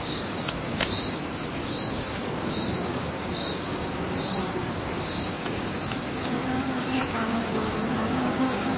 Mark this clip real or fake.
fake